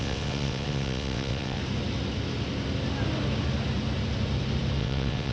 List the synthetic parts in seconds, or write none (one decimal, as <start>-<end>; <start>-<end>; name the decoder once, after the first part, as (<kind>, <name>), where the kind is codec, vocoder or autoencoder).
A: 0.0-1.6 (vocoder, WaveNeXt); 4.8-5.3